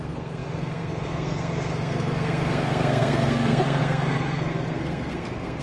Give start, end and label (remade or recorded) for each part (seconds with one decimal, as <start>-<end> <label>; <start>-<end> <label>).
0.0-5.6 remade